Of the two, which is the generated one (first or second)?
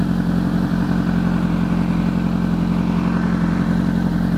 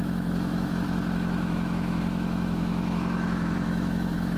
second